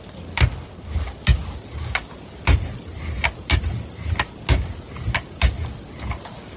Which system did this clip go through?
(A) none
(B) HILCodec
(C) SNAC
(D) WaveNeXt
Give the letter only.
A